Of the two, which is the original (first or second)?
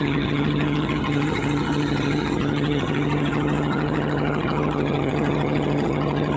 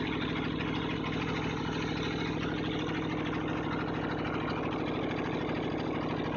second